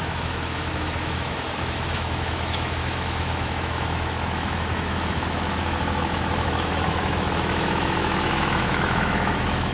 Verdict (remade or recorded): remade